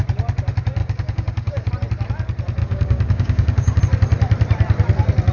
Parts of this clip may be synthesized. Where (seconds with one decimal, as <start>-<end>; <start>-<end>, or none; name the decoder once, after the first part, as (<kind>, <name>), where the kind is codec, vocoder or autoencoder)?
0.8-1.7 (codec, DAC); 2.6-3.8